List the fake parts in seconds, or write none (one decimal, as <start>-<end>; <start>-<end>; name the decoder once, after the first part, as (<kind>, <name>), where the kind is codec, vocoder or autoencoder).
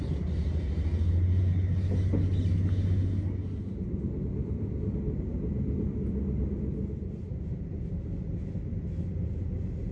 none